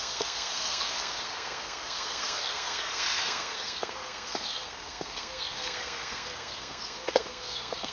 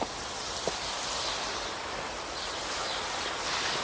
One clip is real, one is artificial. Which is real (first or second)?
second